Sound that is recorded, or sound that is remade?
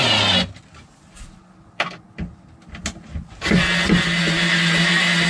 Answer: recorded